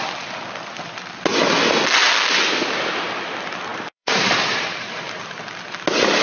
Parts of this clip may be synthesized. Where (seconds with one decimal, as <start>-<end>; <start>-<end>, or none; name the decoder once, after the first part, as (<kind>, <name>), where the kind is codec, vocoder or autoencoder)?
3.7-5.2 (vocoder, BigVGAN v2)